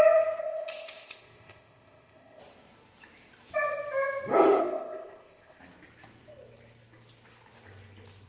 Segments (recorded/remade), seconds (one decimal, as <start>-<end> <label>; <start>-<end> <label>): 0.0-0.4 recorded; 0.4-2.4 remade; 2.4-4.6 recorded; 4.6-5.6 remade; 5.6-8.3 recorded